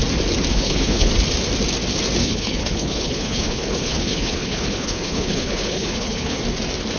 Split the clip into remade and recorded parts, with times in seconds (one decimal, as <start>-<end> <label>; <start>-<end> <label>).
0.0-0.5 recorded; 0.5-1.1 remade; 1.1-2.2 recorded; 2.2-6.4 remade; 6.4-7.0 recorded